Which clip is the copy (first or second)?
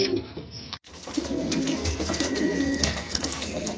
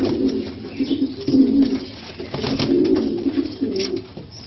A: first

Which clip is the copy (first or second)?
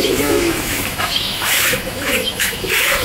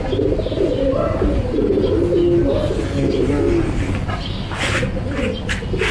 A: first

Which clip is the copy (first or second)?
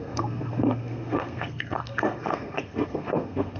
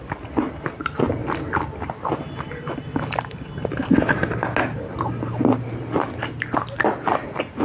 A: first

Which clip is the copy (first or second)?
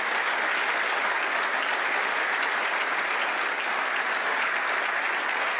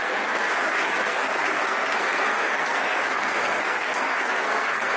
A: second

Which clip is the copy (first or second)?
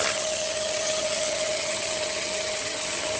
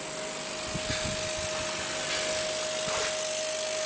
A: first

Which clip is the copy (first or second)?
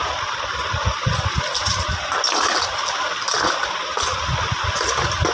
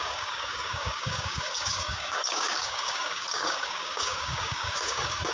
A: second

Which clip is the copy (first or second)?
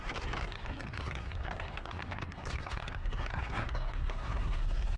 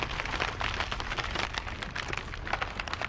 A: first